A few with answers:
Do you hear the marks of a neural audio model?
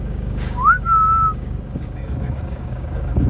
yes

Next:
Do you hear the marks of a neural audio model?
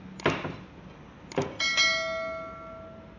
no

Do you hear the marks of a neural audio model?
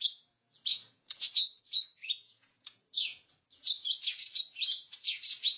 yes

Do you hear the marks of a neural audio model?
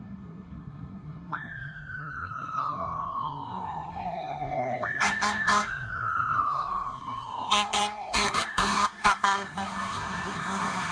yes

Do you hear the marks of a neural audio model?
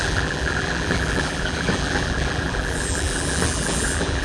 yes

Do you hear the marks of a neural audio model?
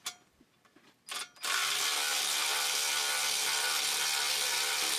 no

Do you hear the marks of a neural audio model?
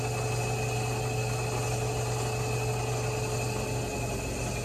no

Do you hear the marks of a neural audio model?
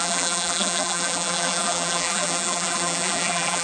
yes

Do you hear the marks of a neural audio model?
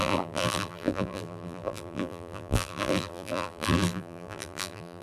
yes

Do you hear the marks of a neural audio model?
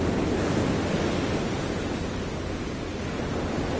no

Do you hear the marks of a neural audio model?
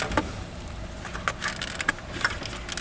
no